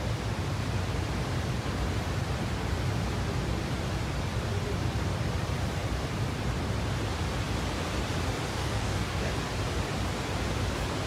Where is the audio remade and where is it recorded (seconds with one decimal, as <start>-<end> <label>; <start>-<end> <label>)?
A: 0.0-8.5 recorded; 8.5-9.3 remade; 9.3-11.1 recorded